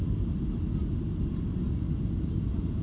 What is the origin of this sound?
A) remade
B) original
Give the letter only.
B